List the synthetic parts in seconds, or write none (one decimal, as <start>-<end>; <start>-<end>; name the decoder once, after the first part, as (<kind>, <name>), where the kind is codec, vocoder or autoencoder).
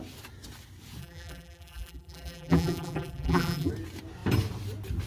1.0-3.7 (vocoder, BigVGAN v2)